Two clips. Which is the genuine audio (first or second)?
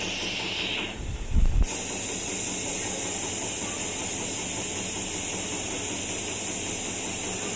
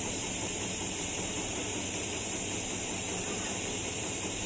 first